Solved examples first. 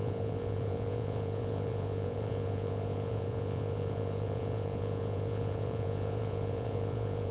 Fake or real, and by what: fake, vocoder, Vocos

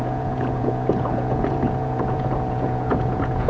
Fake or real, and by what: fake, vocoder, Vocos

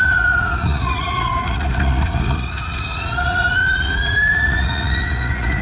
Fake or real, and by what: fake, vocoder, Vocos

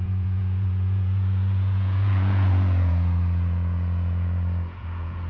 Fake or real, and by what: fake, vocoder, Vocos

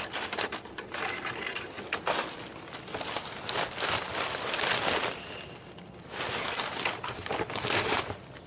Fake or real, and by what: real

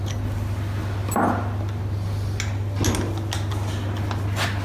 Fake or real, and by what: real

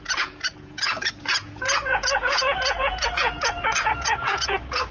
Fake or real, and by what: fake, vocoder, Vocos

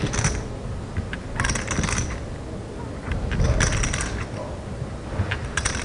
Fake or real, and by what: real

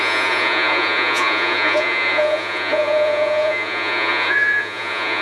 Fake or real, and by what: fake, vocoder, Vocos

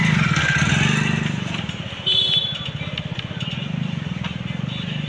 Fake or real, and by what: real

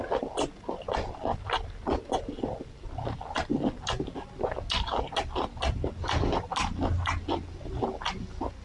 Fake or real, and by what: real